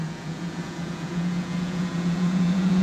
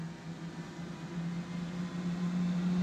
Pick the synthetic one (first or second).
first